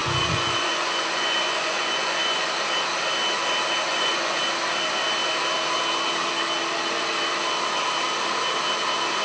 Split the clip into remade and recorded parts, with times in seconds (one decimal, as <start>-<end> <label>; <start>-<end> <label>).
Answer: 0.0-2.5 remade; 2.5-3.9 recorded; 3.9-4.4 remade; 4.4-9.2 recorded